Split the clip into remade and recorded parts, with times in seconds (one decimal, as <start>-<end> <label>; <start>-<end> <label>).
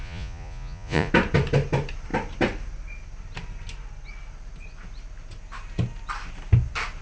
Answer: 0.0-1.1 remade; 1.1-7.0 recorded